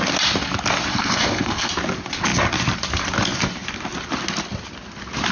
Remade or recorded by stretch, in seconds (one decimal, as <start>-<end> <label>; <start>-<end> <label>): 0.0-0.9 recorded; 0.9-1.7 remade; 1.7-5.3 recorded